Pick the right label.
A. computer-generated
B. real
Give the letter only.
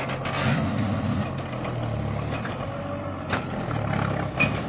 B